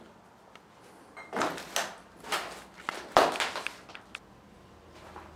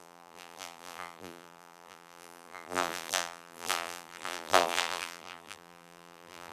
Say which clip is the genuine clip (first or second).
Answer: first